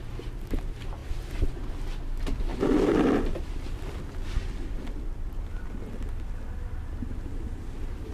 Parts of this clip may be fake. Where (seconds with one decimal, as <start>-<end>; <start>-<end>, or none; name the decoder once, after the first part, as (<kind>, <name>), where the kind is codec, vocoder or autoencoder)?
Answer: 1.0-1.7 (vocoder, BigVGAN v2); 2.5-6.1